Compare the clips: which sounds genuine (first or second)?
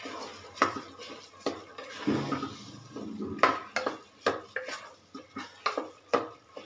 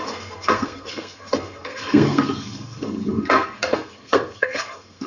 first